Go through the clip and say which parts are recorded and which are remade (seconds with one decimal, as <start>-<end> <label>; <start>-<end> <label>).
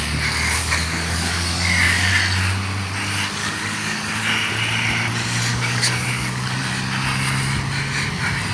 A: 0.0-0.6 recorded; 0.6-2.1 remade; 2.1-3.4 recorded; 3.4-4.2 remade; 4.2-5.5 recorded; 5.5-6.6 remade; 6.6-8.5 recorded